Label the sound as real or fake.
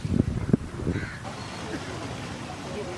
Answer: real